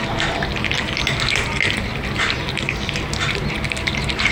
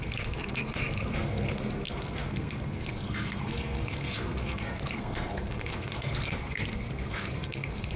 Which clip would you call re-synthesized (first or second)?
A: second